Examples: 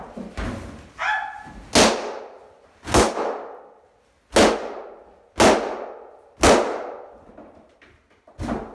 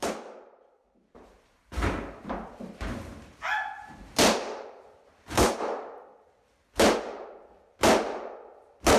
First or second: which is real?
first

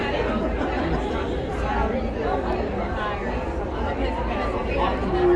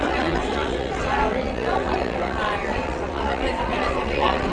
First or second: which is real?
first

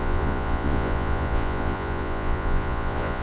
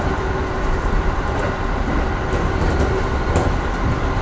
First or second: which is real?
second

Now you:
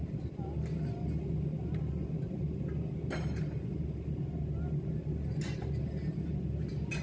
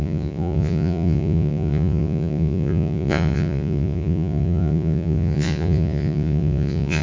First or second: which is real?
first